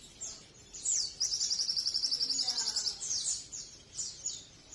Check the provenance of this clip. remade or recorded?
recorded